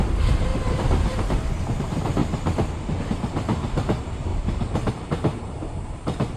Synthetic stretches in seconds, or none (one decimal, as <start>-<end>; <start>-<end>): 0.0-0.5; 1.6-2.2; 3.0-4.3; 4.9-6.4

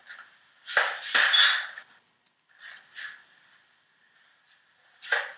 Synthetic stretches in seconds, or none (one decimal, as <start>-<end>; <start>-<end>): none

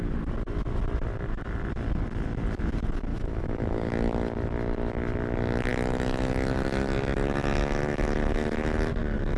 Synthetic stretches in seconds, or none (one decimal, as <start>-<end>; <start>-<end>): 3.1-3.9

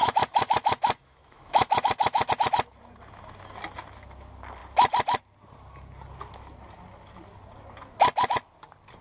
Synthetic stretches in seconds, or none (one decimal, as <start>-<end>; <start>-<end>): 0.0-2.3